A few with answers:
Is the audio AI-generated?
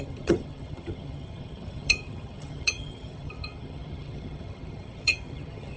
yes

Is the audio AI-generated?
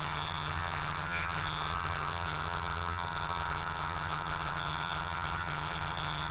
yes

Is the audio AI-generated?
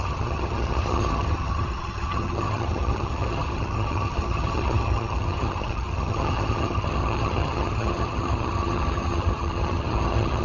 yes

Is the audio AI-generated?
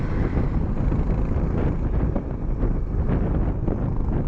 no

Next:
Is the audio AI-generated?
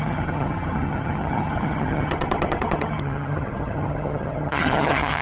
yes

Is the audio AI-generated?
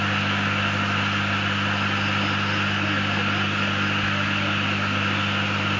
no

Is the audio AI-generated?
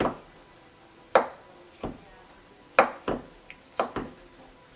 no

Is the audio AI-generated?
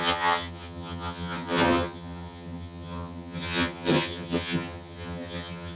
yes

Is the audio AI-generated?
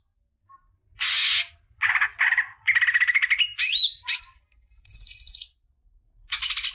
no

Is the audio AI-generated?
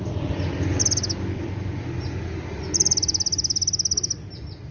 no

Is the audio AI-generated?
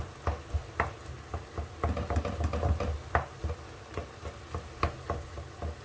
no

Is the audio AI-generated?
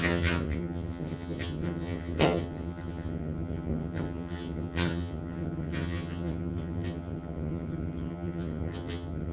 yes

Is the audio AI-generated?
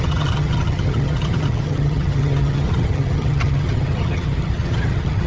yes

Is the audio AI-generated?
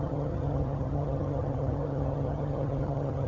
yes